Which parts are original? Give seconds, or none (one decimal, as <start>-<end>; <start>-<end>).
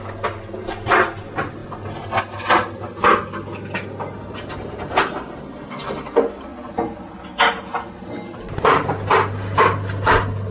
0.0-10.5